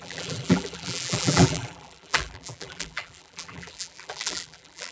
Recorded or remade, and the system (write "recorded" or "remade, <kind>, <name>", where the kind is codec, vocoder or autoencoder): remade, vocoder, BigVGAN v2